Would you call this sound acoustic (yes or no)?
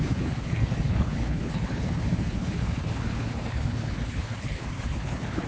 no